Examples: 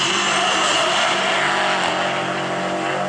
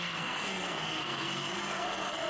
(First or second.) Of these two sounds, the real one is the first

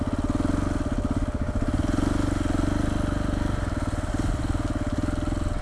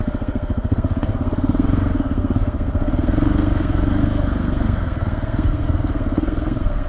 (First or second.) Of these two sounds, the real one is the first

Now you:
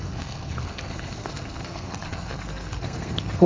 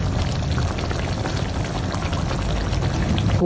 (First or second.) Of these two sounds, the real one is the second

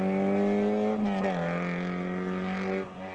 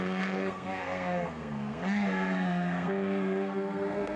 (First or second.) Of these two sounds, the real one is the first